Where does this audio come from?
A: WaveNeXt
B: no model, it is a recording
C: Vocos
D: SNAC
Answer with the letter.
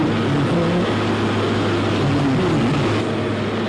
B